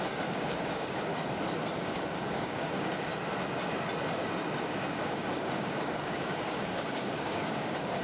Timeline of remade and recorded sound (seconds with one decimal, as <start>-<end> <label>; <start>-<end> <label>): 0.0-1.1 remade; 1.1-1.8 recorded; 1.8-3.1 remade; 3.1-4.6 recorded; 4.6-8.0 remade

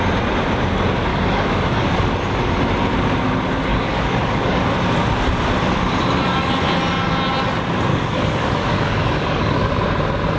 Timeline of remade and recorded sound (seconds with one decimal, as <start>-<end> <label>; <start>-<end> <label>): 0.0-1.1 recorded; 1.1-2.1 remade; 2.1-3.7 recorded; 3.7-4.6 remade; 4.6-7.9 recorded; 7.9-9.7 remade; 9.7-10.4 recorded

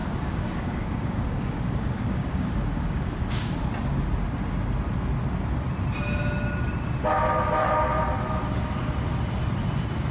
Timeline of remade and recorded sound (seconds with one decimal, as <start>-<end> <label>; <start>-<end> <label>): 0.0-3.5 remade; 3.5-10.1 recorded